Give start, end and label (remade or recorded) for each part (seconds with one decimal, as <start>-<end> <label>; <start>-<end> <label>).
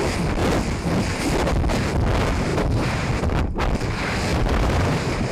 0.0-2.5 recorded; 2.5-3.1 remade; 3.1-4.3 recorded; 4.3-5.3 remade